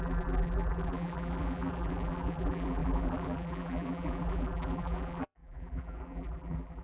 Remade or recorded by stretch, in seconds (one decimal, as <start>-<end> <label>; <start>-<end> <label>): 0.0-6.8 remade